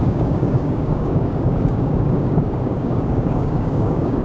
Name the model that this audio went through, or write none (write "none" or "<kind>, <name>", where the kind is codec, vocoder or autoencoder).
codec, DAC